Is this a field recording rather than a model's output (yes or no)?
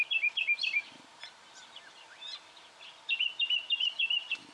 no